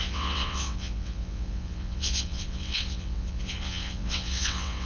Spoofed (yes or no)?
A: yes